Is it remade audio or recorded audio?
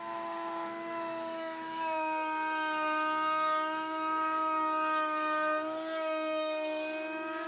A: remade